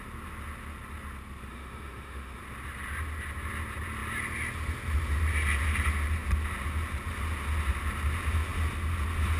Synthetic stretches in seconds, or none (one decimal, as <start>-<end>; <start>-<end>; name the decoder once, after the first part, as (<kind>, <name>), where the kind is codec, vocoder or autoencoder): 1.5-2.4 (autoencoder, DAC-VAE)